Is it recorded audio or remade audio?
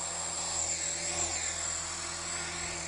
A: recorded